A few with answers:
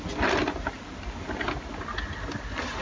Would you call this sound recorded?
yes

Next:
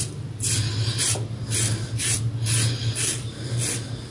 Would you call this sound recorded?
yes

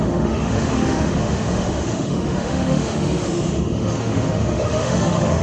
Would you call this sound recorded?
no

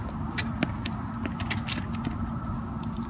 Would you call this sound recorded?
yes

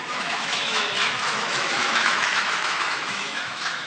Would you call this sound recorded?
no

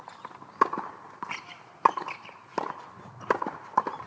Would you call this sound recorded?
yes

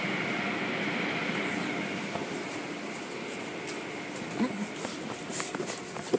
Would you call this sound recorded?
yes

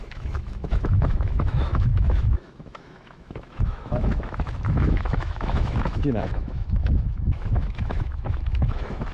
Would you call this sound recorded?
no